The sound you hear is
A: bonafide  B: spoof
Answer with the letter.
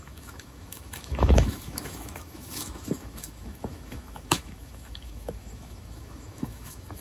B